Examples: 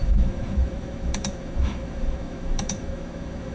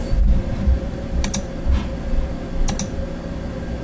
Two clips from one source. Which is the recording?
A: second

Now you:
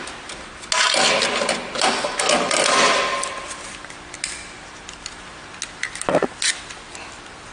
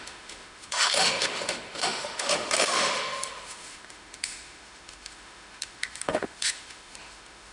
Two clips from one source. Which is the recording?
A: first